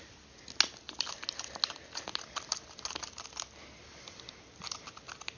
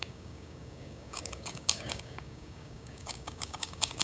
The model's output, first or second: second